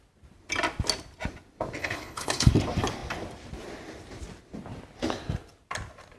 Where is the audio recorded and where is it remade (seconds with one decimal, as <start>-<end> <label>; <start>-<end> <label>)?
0.0-1.8 recorded; 1.8-2.5 remade; 2.5-6.2 recorded

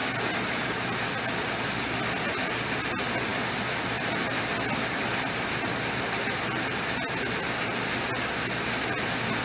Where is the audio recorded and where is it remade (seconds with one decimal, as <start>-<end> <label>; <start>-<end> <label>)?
0.0-9.4 recorded

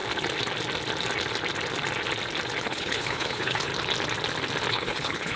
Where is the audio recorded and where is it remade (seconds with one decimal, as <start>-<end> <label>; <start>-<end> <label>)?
0.0-2.6 recorded; 2.6-3.7 remade; 3.7-4.7 recorded; 4.7-5.4 remade

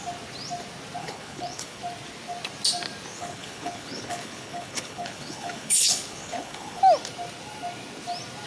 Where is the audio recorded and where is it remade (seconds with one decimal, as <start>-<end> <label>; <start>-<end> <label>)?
0.0-1.0 recorded; 1.0-1.8 remade; 1.8-3.1 recorded; 3.1-6.8 remade; 6.8-8.5 recorded

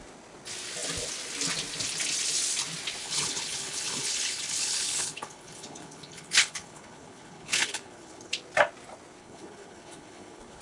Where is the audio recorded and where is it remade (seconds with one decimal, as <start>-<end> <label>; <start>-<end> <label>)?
0.0-3.0 recorded; 3.0-8.3 remade; 8.3-9.2 recorded; 9.2-10.6 remade

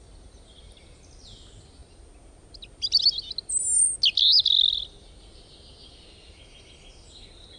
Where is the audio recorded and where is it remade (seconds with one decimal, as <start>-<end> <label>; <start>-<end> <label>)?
0.0-7.6 recorded